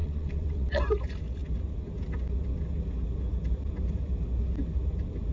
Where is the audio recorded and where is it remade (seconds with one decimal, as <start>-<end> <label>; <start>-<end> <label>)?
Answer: 0.0-0.8 remade; 0.8-5.3 recorded